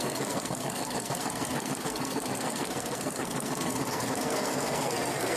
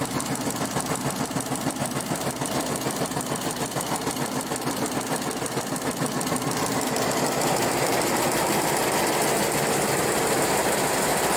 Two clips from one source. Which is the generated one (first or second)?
first